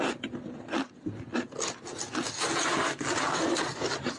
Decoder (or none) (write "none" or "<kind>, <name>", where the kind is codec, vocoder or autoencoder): none